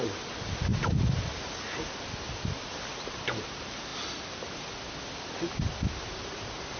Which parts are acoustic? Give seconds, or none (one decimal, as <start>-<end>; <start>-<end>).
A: 0.0-6.8